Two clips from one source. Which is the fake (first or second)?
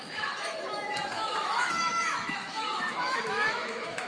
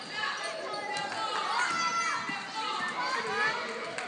first